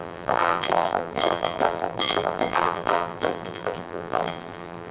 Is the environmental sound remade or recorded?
remade